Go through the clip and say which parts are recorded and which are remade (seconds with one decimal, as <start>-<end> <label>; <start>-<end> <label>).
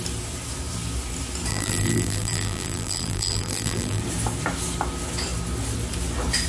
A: 0.0-1.5 recorded; 1.5-4.0 remade; 4.0-6.5 recorded